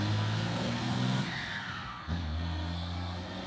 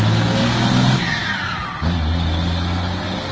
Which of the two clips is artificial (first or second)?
first